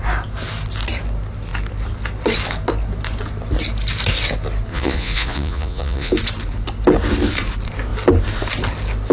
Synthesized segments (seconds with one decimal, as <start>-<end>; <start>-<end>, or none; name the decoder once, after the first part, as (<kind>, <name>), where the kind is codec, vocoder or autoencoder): 4.7-6.1 (vocoder, Vocos)